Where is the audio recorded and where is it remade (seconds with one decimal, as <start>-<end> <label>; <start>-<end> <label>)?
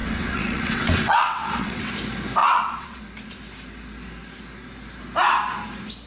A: 0.0-1.9 remade; 1.9-2.4 recorded; 2.4-3.0 remade; 3.0-6.1 recorded